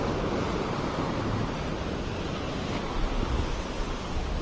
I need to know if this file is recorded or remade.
recorded